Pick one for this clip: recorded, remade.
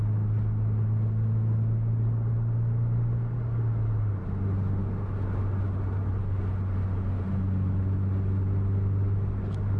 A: recorded